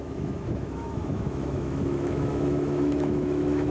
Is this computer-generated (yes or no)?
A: yes